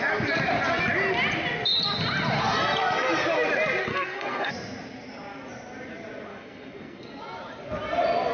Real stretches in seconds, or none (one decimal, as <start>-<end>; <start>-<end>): 0.0-3.9; 4.5-6.3; 7.2-8.3